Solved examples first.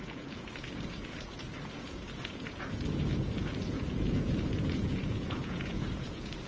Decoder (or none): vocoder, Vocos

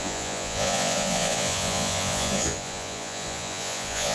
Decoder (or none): vocoder, Vocos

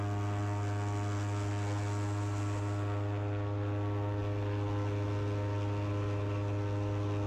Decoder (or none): none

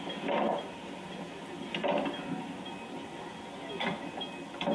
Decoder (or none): none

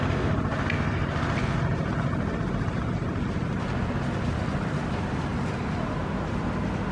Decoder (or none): none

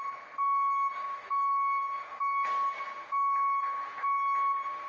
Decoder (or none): none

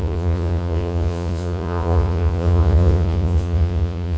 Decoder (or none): vocoder, Vocos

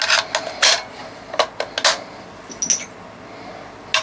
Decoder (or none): none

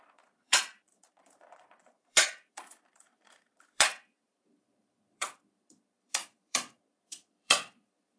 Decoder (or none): vocoder, Vocos